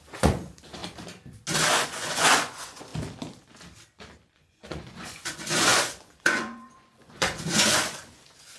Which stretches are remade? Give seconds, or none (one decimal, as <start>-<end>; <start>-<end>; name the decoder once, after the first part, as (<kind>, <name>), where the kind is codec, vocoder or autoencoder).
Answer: 0.0-0.8 (vocoder, Vocos); 1.7-2.9; 4.3-8.6